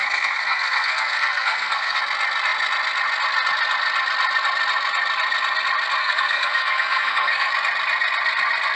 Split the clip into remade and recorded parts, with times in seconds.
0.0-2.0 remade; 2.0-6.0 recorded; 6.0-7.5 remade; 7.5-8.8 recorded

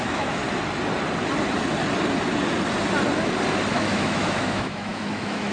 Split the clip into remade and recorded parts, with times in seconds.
0.0-0.4 remade; 0.4-3.7 recorded; 3.7-5.5 remade

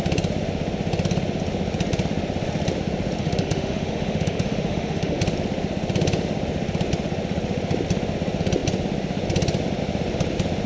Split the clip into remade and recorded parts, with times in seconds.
0.0-3.2 recorded; 3.2-5.2 remade; 5.2-10.7 recorded